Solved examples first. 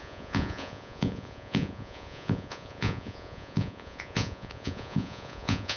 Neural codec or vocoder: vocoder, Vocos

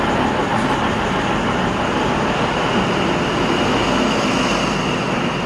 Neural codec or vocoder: none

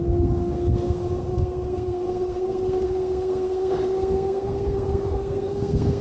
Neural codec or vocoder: codec, SNAC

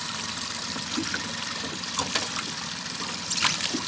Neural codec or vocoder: vocoder, BigVGAN v2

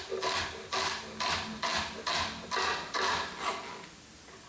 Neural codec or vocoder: none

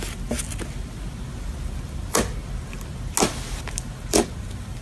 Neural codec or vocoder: none